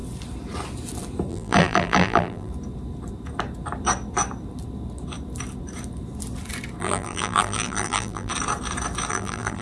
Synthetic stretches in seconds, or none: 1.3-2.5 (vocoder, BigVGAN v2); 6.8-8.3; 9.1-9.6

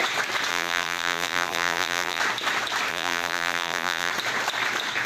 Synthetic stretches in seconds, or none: 0.5-2.2 (vocoder, BigVGAN v2); 2.9-4.1

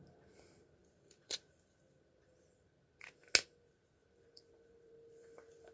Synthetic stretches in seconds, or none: 0.8-2.8 (vocoder, BigVGAN v2); 4.0-5.7

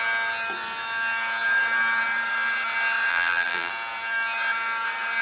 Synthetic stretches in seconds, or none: 3.1-3.7 (vocoder, BigVGAN v2)

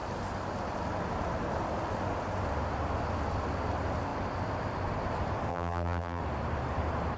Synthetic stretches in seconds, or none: 5.5-6.2 (vocoder, BigVGAN v2)